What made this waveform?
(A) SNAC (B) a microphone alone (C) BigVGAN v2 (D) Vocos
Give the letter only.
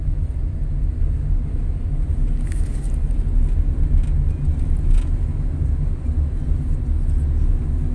B